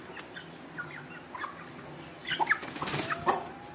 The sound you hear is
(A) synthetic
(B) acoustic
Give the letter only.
B